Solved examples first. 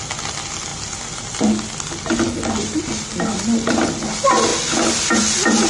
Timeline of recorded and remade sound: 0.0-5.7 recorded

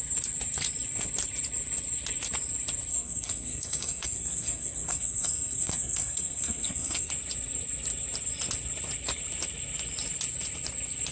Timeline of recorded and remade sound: 0.0-2.9 recorded; 2.9-7.1 remade; 7.1-11.1 recorded

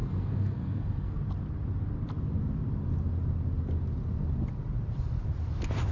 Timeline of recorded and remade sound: 0.0-1.2 remade; 1.2-5.9 recorded

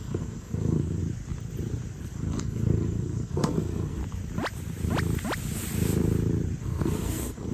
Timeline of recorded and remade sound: 0.0-1.0 remade; 1.0-2.0 recorded; 2.0-4.0 remade; 4.0-6.6 recorded; 6.6-7.5 remade